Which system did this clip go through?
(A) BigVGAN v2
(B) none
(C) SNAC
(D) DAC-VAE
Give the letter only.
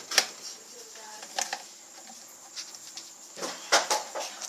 B